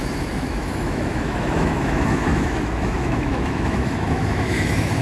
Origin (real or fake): fake